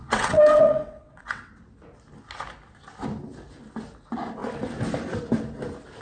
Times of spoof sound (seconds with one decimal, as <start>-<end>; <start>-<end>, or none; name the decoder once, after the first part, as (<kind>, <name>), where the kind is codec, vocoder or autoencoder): 0.0-1.5 (vocoder, WaveNeXt)

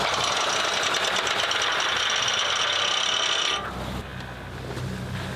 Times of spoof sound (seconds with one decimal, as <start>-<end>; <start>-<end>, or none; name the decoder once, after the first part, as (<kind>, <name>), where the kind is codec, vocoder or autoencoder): none

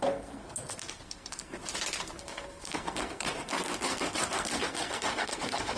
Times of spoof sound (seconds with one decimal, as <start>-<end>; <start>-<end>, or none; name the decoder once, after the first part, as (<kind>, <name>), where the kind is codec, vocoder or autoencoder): 0.0-1.6 (codec, SNAC); 2.2-5.8